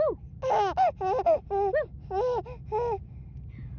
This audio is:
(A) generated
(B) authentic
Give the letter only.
B